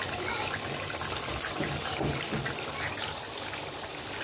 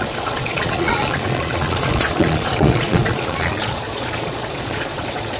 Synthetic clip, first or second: second